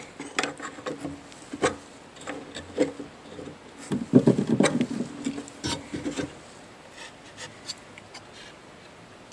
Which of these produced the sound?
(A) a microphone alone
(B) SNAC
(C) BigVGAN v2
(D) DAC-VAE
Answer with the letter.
A